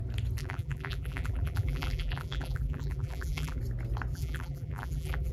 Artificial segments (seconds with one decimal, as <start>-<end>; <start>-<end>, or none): 0.4-3.6; 4.1-5.3